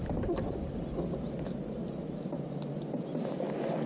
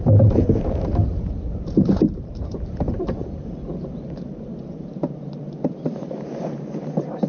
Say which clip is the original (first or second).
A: first